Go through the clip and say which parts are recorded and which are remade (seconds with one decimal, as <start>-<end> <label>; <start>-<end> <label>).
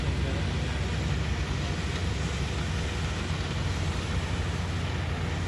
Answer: 0.0-5.5 recorded